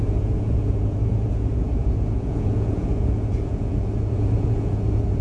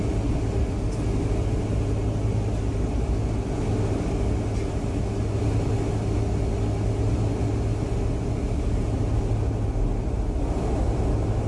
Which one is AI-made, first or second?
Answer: first